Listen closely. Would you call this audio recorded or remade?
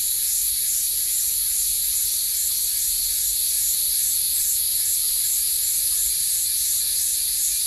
recorded